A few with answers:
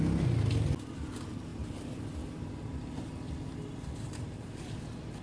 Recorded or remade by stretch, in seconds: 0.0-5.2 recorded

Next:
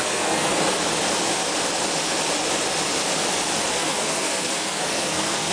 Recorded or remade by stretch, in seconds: 0.0-0.5 remade; 0.5-3.7 recorded; 3.7-5.5 remade

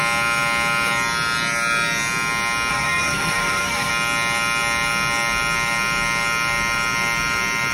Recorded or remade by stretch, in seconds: 0.0-2.7 recorded; 2.7-3.9 remade; 3.9-7.7 recorded

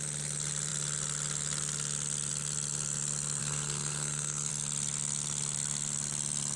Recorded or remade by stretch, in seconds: 0.0-3.4 recorded; 3.4-4.5 remade; 4.5-6.6 recorded